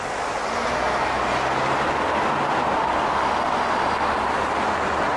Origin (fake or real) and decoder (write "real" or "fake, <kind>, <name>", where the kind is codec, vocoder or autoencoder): real